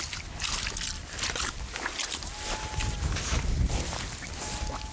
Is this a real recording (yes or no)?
yes